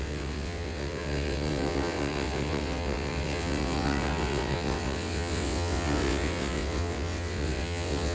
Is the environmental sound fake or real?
fake